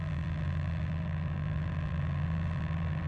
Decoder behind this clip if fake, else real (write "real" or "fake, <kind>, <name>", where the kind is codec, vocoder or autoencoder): fake, vocoder, BigVGAN v2